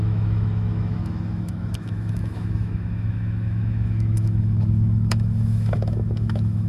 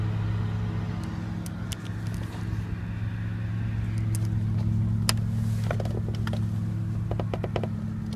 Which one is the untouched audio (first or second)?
second